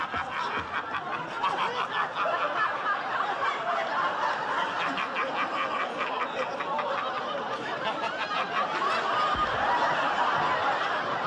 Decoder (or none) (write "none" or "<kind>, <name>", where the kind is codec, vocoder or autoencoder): none